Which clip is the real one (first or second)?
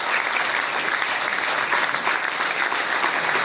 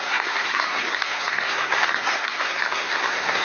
first